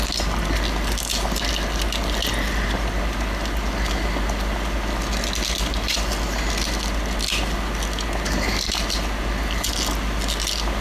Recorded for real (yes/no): yes